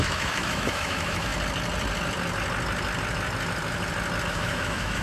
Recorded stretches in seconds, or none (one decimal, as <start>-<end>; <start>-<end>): 1.3-4.3